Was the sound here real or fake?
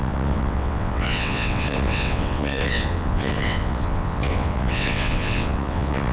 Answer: fake